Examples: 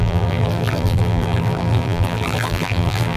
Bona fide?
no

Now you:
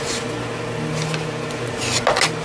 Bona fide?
yes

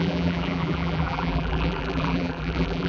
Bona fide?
no